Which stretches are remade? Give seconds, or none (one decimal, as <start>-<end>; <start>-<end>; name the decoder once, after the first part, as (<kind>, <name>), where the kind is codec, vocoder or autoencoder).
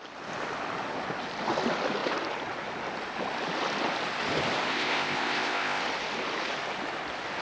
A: 4.7-5.8 (codec, ZipCodec)